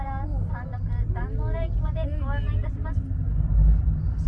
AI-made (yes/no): no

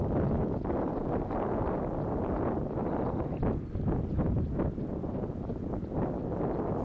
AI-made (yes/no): no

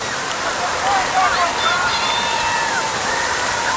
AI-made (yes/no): yes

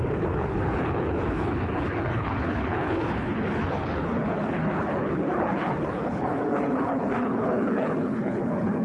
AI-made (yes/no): yes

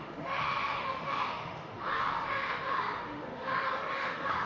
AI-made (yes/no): yes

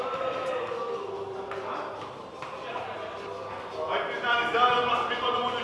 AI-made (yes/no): no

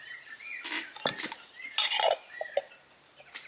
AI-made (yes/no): no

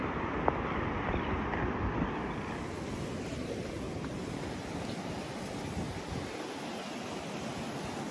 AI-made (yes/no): no